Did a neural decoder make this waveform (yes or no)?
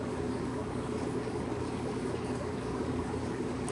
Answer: yes